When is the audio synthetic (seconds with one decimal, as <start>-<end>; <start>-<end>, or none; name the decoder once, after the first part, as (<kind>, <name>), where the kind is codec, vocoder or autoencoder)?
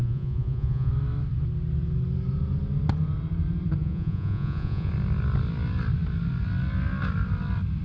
0.0-0.9 (vocoder, Vocos); 3.8-4.9